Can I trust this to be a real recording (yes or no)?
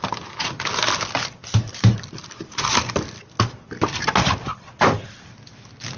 yes